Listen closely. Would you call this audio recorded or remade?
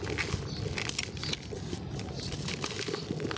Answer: recorded